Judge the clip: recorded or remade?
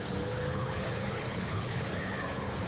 remade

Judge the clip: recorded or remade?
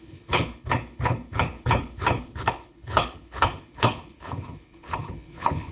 remade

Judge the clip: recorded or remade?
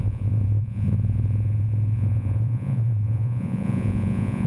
remade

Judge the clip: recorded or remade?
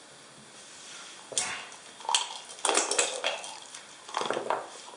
recorded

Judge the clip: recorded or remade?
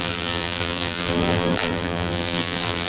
remade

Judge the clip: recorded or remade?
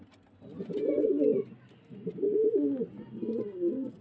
recorded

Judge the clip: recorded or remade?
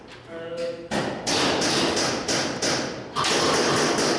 recorded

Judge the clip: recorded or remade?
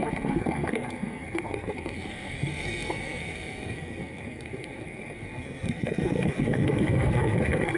remade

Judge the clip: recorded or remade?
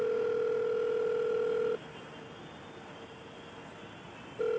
recorded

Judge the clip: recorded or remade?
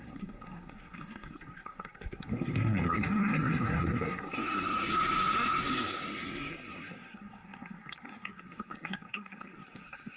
remade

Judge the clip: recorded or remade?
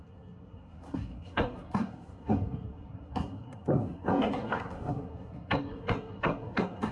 remade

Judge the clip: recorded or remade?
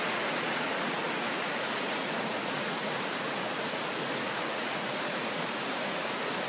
remade